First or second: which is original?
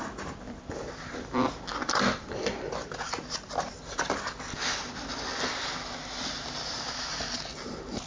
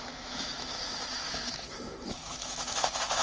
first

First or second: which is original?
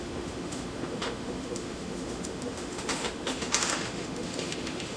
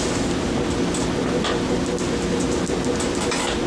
second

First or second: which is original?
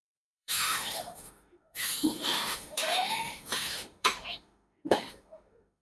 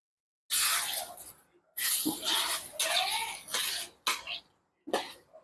second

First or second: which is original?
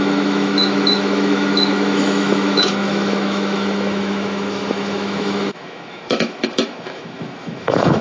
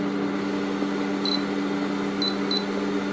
second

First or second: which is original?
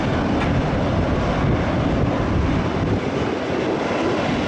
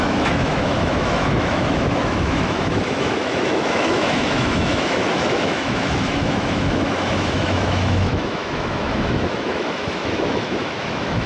first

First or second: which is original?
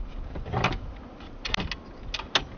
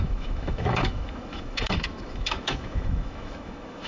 first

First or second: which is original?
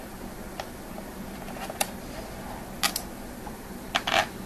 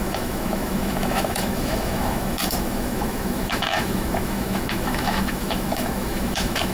first